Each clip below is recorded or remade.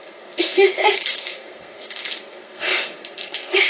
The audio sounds remade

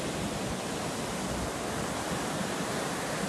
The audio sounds recorded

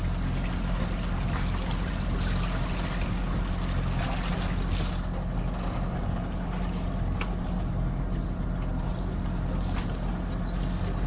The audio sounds recorded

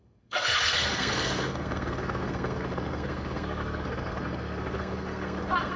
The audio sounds remade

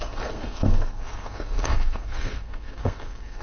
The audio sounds remade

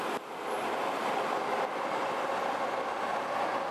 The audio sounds recorded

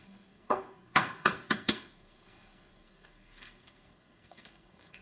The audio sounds remade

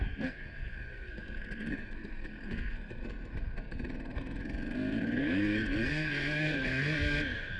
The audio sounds remade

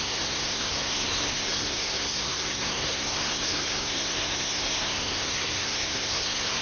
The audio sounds remade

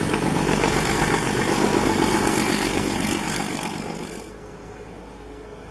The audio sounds remade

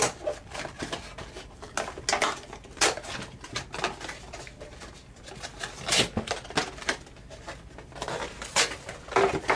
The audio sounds recorded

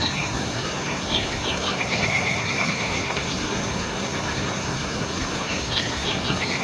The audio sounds remade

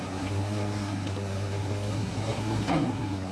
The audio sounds remade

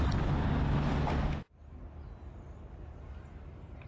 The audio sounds recorded